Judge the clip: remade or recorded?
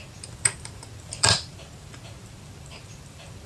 remade